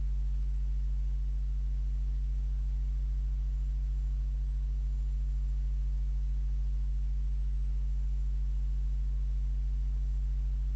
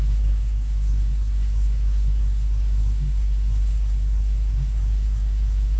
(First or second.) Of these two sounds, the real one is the first